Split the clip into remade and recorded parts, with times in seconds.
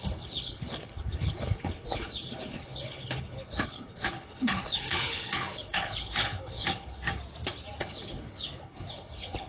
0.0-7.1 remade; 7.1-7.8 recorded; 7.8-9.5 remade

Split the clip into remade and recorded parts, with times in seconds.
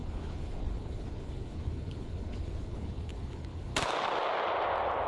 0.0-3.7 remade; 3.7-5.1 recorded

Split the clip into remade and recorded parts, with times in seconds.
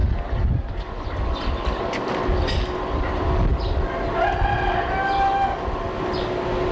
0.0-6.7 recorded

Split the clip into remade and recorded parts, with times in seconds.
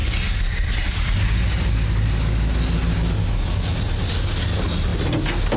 0.0-5.6 recorded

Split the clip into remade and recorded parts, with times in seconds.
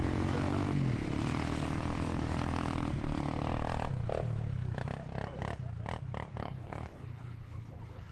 0.0-6.4 recorded; 6.4-8.1 remade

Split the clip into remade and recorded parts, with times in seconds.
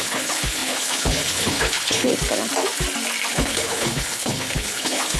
0.0-2.1 remade; 2.1-3.3 recorded; 3.3-5.2 remade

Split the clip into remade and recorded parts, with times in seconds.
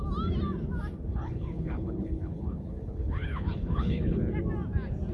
0.0-1.1 recorded; 1.1-4.2 remade; 4.2-5.1 recorded